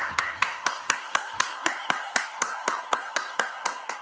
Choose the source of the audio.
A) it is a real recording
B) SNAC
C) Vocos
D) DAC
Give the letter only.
B